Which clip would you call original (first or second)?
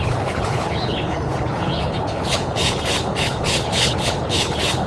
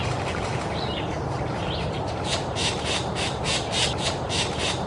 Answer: second